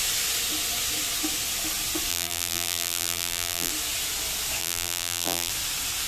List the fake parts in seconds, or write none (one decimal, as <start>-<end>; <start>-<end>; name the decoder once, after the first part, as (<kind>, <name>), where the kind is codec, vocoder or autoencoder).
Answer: 2.1-3.7 (vocoder, BigVGAN v2); 4.6-5.5